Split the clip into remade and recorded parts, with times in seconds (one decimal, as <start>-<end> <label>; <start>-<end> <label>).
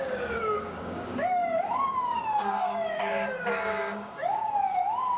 0.0-5.2 remade